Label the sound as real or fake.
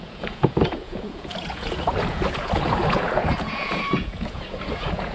fake